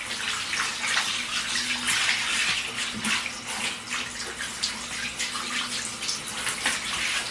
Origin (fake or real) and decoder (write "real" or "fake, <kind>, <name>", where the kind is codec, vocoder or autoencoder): real